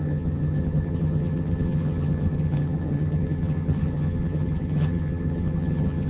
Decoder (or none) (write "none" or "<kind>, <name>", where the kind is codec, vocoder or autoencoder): vocoder, HiFi-GAN